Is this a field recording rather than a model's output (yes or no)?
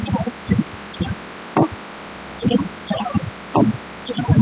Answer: yes